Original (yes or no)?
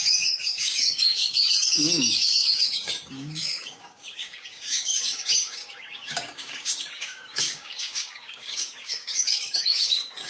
no